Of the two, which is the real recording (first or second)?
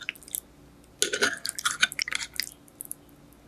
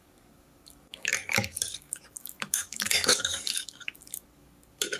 first